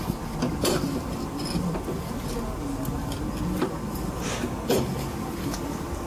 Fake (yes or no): no